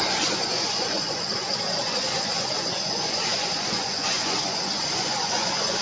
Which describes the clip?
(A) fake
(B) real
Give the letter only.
A